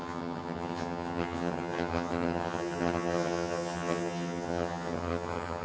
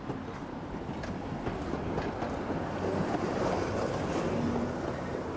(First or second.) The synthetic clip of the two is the first